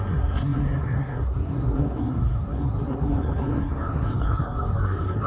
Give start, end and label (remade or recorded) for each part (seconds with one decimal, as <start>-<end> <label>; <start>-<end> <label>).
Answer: 0.0-5.3 remade

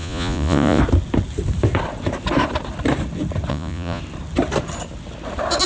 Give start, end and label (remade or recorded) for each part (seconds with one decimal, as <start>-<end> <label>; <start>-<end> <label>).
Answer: 0.0-0.8 remade; 0.8-3.5 recorded; 3.5-4.0 remade; 4.0-5.7 recorded

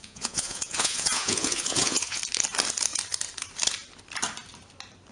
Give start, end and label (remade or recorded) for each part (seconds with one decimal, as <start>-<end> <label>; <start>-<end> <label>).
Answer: 0.0-2.2 remade; 2.2-5.1 recorded

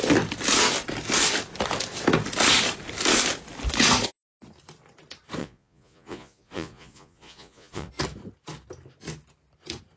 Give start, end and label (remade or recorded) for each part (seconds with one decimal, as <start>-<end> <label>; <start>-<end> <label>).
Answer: 0.0-5.4 recorded; 5.4-7.9 remade; 7.9-10.0 recorded

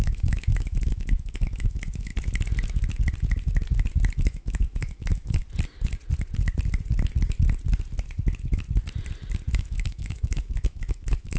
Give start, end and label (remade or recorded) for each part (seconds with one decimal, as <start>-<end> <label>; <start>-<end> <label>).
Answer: 0.0-2.1 remade; 2.1-4.1 recorded; 4.1-5.4 remade; 5.4-9.5 recorded; 9.5-11.4 remade